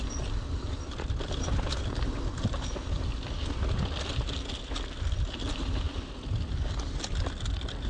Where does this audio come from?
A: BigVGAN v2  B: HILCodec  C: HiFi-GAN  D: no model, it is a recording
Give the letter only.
D